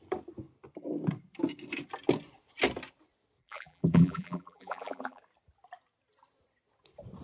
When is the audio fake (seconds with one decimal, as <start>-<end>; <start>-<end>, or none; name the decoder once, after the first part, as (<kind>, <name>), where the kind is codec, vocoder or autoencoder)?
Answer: 3.4-5.2 (vocoder, BigVGAN v2)